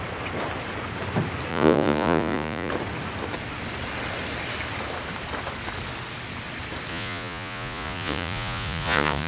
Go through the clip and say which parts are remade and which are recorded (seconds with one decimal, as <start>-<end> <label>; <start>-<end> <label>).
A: 0.0-1.5 recorded; 1.5-2.7 remade; 2.7-6.9 recorded; 6.9-9.3 remade